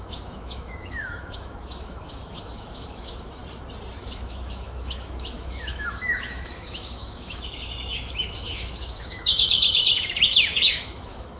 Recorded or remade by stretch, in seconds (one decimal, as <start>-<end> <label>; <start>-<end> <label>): 0.0-3.4 remade; 3.4-4.0 recorded; 4.0-11.4 remade